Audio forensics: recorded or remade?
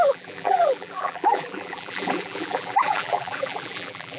remade